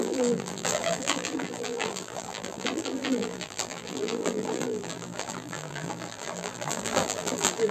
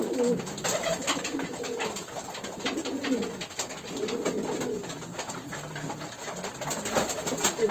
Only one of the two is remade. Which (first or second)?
first